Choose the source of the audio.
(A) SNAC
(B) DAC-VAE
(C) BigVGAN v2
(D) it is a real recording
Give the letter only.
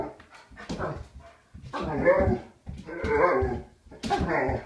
D